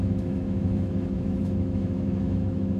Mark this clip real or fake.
fake